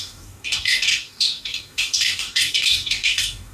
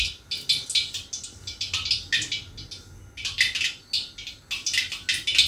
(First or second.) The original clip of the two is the second